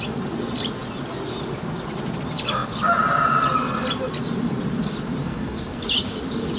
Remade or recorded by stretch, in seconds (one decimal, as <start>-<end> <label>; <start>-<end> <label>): 0.0-5.2 recorded; 5.2-5.8 remade; 5.8-6.6 recorded